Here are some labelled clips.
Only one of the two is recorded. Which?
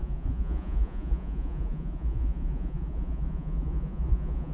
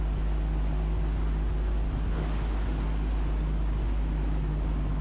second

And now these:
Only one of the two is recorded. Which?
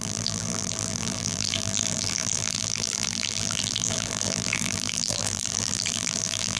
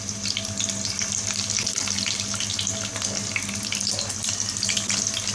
second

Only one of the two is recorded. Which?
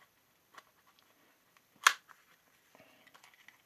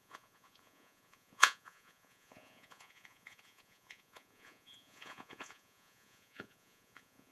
first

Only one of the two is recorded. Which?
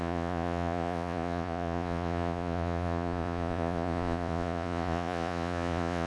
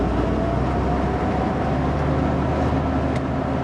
second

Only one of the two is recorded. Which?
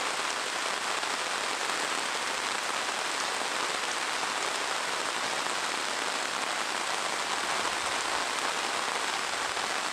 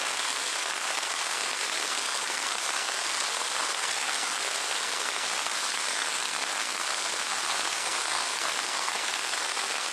first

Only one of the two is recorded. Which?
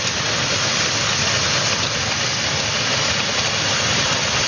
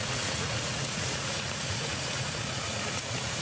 first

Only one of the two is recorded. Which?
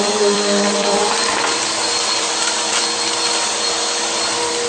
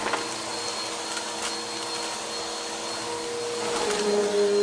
second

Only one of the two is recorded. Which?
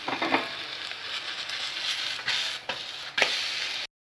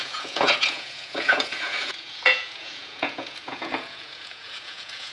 first